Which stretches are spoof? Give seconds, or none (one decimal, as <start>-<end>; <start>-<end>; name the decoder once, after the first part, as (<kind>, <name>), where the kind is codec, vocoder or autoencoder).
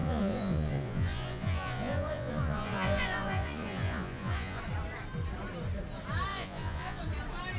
0.0-4.6 (vocoder, Vocos); 6.3-7.0